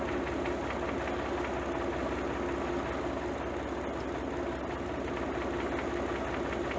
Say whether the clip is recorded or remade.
recorded